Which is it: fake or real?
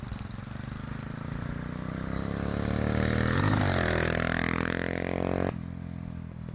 real